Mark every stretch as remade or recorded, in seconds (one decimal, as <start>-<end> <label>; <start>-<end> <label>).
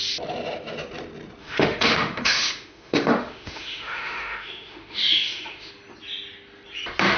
0.0-1.4 recorded; 1.4-5.7 remade; 5.7-7.2 recorded